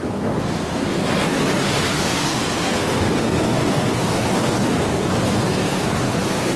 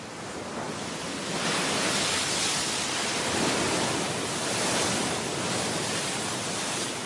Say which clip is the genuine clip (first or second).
second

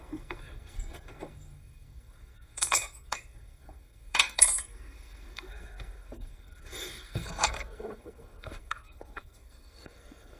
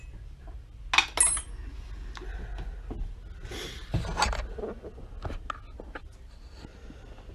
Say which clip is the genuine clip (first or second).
second